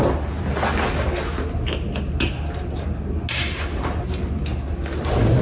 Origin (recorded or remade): recorded